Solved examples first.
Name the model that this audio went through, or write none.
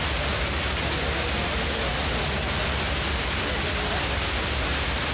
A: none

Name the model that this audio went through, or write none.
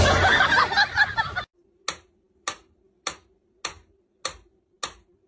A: none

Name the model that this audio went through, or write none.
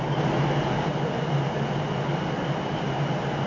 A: none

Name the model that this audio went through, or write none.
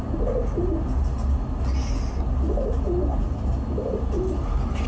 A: none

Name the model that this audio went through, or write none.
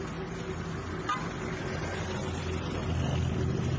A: none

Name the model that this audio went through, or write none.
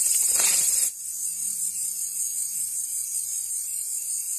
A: none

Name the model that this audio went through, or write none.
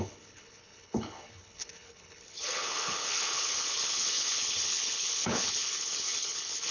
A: codec, HILCodec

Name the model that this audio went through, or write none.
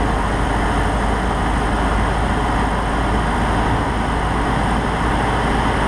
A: none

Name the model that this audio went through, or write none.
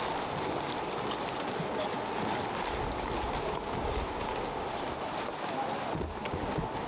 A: none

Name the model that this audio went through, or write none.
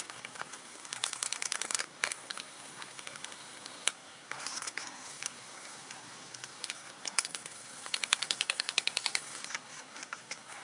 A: codec, SNAC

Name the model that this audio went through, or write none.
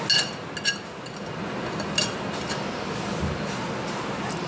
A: none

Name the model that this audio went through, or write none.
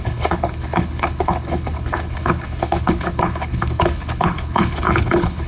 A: codec, HILCodec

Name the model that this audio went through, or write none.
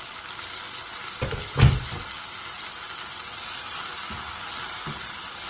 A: vocoder, BigVGAN v2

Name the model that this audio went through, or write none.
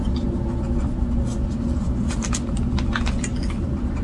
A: none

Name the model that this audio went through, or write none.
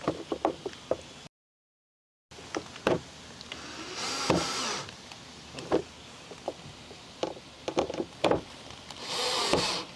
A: none